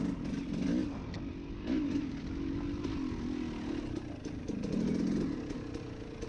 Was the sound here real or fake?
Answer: real